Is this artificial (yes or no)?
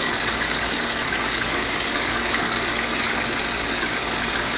yes